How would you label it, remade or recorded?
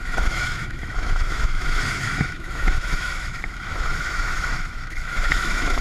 remade